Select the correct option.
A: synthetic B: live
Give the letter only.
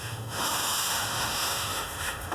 A